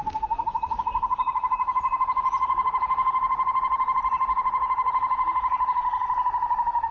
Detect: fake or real fake